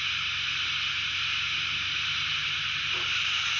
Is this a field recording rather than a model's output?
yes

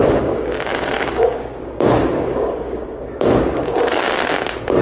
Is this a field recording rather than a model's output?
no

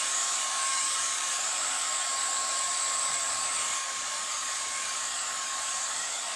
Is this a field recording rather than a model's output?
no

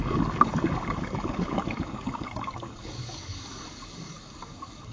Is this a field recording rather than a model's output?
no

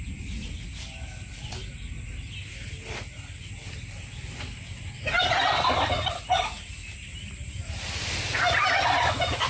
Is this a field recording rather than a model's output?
yes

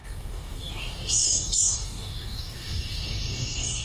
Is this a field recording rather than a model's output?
no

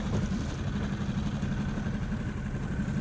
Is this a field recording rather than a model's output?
yes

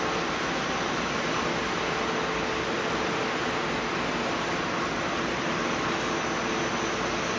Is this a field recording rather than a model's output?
yes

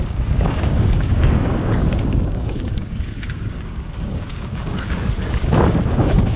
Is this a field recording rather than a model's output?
no